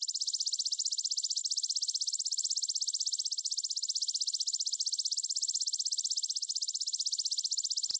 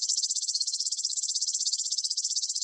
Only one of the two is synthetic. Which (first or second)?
second